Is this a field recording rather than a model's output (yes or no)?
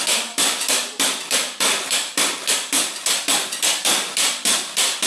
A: no